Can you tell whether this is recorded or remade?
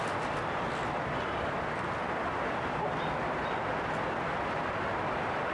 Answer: recorded